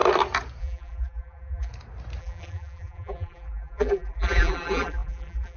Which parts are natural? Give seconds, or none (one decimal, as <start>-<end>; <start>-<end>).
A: 0.0-0.6; 1.7-2.2